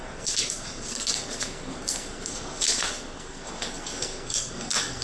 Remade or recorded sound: remade